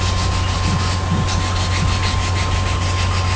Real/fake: real